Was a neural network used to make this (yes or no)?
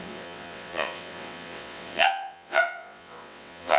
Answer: yes